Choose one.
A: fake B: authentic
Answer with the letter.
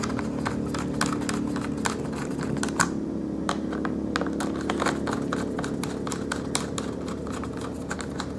B